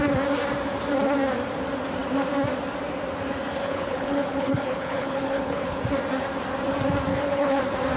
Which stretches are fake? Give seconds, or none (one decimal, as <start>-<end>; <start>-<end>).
3.6-5.8; 7.1-7.6